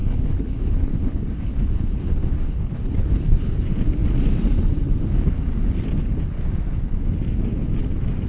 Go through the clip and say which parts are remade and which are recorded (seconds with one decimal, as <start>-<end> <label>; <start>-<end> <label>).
0.0-3.6 remade; 3.6-8.3 recorded